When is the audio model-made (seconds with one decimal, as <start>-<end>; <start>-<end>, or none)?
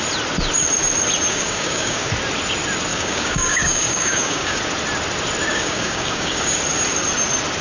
1.3-2.1; 2.9-4.6; 5.5-6.6